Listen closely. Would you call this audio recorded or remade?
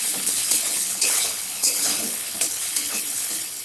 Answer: remade